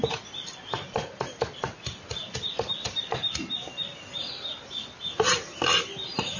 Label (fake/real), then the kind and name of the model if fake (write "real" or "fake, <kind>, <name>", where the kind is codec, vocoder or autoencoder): real